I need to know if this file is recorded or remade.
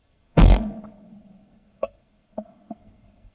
remade